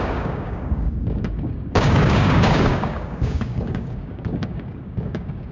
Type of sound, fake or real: fake